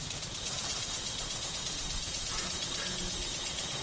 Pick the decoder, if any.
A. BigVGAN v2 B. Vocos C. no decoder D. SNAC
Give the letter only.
B